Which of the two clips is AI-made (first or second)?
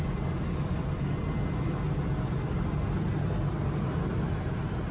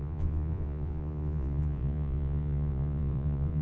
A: second